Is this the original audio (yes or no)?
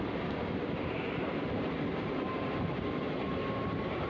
no